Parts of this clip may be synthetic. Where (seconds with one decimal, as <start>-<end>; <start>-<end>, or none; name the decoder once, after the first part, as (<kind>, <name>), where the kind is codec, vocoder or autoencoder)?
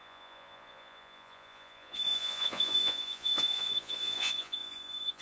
0.0-5.2 (vocoder, Vocos)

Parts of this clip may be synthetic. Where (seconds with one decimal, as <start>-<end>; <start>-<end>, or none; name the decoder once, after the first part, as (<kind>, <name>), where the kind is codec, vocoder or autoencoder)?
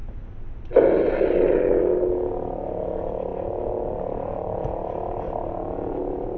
none